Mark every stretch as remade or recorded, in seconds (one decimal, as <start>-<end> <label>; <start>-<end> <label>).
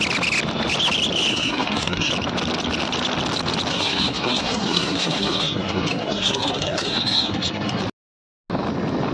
0.0-1.3 recorded; 1.3-2.1 remade; 2.1-3.7 recorded; 3.7-7.8 remade; 7.8-9.1 recorded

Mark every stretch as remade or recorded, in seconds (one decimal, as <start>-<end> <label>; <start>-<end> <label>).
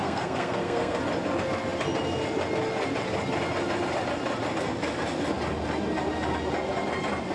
0.0-1.0 remade; 1.0-7.3 recorded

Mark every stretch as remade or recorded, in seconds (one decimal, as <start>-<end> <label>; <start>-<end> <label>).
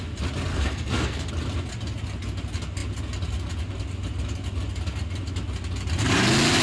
0.0-0.5 recorded; 0.5-1.3 remade; 1.3-6.6 recorded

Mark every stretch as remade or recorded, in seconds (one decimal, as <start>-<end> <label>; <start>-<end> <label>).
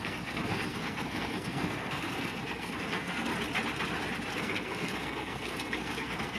0.0-3.3 remade; 3.3-4.3 recorded; 4.3-6.4 remade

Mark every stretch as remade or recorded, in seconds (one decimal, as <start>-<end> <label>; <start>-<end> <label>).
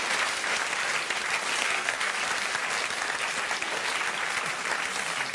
0.0-1.6 recorded; 1.6-2.1 remade; 2.1-5.3 recorded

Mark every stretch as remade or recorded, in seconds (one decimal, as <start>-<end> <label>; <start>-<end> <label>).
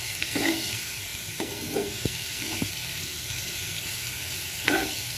0.0-5.2 remade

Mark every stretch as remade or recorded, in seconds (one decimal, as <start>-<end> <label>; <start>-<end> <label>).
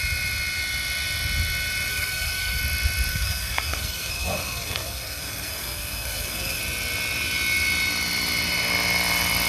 0.0-1.9 recorded; 1.9-2.6 remade; 2.6-3.1 recorded; 3.1-6.6 remade; 6.6-9.5 recorded